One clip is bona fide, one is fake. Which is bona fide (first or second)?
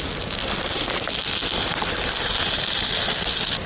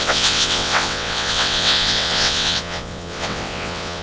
first